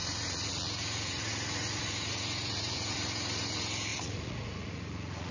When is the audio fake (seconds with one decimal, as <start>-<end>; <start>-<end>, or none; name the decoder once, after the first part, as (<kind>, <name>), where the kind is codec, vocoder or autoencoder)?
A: 0.0-5.3 (vocoder, Vocos)

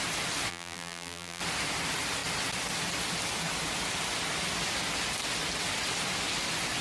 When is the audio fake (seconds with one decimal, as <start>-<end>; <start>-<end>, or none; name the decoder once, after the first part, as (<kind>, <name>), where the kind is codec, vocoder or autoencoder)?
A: 0.5-1.4 (vocoder, BigVGAN v2)

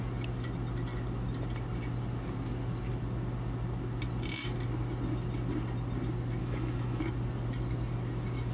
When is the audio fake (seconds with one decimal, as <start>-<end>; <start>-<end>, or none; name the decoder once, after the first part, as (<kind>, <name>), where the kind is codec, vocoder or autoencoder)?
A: 6.4-7.0 (autoencoder, DAC-VAE)

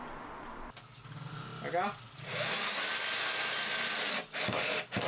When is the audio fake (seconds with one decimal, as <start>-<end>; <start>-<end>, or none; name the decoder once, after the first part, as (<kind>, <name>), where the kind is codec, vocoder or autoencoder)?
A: none